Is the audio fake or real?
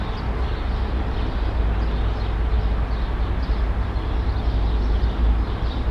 real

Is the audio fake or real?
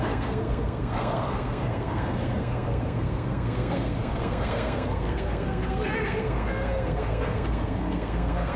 fake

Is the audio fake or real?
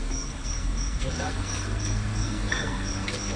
fake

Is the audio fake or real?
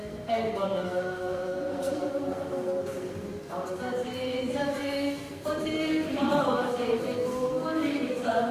fake